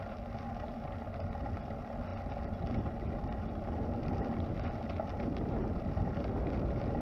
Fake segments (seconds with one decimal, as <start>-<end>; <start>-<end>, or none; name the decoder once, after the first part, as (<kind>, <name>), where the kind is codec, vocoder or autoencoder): none